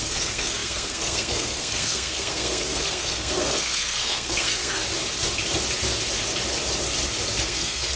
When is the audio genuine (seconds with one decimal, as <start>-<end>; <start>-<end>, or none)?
4.8-7.4